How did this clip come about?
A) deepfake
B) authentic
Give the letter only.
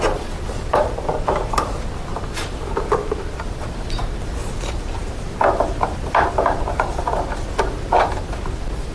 A